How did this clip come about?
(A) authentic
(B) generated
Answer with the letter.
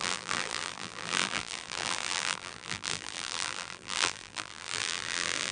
B